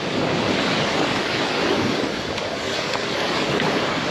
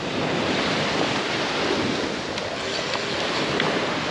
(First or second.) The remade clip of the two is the first